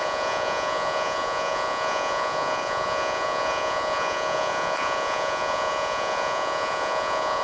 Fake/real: fake